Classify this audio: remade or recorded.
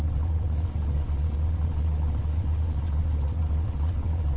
remade